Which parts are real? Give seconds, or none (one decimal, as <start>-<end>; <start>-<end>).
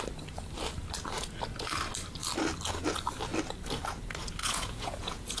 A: 0.0-4.4